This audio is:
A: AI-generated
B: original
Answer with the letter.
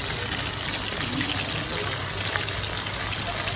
B